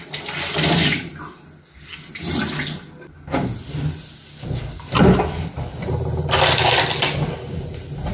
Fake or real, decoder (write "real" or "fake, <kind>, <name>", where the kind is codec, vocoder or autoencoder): real